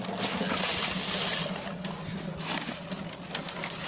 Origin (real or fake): real